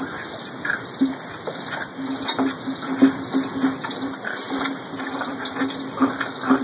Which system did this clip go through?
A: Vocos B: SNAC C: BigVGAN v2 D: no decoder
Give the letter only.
D